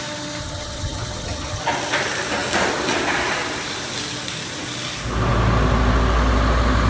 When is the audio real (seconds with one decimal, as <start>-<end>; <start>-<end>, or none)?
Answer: 0.0-0.4; 1.6-6.9